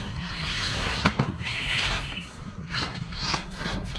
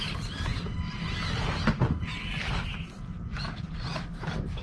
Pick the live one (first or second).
second